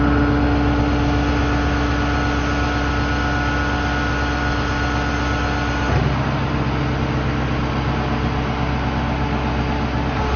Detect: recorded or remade recorded